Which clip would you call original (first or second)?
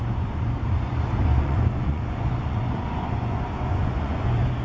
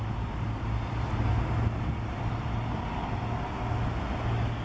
second